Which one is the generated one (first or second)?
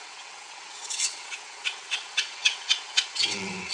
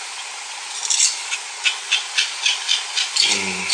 first